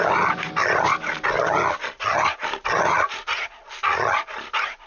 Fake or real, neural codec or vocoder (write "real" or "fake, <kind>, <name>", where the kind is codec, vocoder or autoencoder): real